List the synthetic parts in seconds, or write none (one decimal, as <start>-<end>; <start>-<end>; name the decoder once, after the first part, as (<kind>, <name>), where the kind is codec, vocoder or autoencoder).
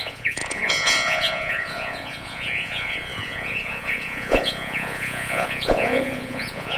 0.0-6.8 (vocoder, Vocos)